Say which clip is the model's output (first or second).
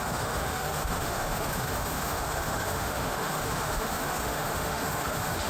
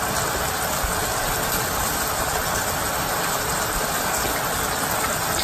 first